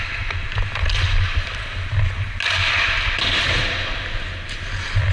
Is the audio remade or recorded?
recorded